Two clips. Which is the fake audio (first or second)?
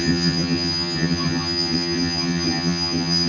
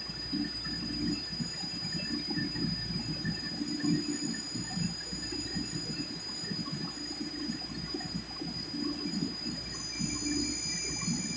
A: first